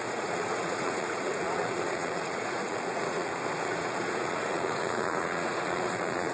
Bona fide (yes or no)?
no